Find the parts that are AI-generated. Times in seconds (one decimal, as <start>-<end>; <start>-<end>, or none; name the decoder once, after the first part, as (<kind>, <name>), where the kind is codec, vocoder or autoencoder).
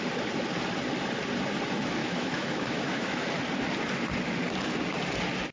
2.0-3.3 (autoencoder, DAC-VAE)